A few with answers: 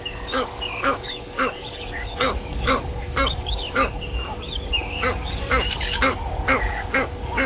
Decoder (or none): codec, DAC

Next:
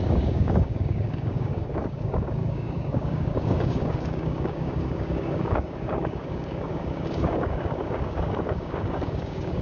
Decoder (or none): codec, DAC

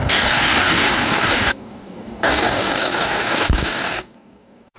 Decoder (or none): codec, DAC